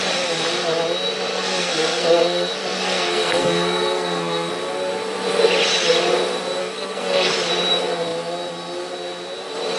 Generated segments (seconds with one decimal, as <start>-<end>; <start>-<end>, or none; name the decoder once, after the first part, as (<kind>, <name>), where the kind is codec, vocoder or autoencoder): 1.3-4.5 (codec, SNAC); 6.6-7.3

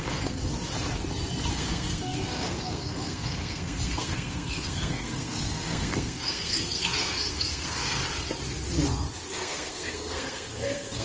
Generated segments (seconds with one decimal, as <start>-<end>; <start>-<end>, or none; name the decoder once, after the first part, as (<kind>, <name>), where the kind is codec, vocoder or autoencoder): 0.0-0.5 (codec, SNAC); 1.5-8.0; 9.3-11.0